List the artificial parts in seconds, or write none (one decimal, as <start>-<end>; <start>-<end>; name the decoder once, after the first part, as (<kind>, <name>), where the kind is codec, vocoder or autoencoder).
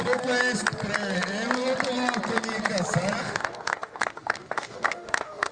3.2-5.5 (autoencoder, DAC-VAE)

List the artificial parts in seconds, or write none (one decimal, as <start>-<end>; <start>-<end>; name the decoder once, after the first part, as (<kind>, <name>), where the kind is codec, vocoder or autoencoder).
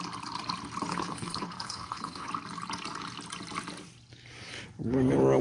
0.9-2.3 (codec, HILCodec)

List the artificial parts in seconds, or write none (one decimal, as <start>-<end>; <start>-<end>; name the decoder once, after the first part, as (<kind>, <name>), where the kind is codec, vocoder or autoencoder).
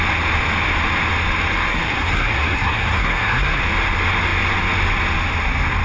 1.7-3.6 (codec, SNAC)